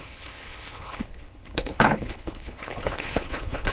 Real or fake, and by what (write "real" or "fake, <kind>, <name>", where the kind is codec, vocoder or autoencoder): fake, codec, HILCodec